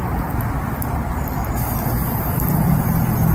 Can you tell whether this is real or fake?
real